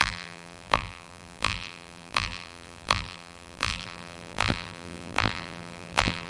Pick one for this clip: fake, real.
fake